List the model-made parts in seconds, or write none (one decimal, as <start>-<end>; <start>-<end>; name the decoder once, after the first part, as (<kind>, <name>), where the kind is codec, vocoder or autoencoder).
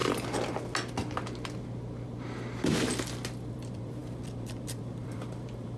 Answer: 3.5-5.8 (vocoder, BigVGAN v2)